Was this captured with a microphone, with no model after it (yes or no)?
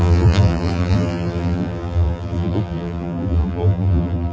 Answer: no